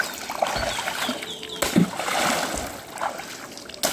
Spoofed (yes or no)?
no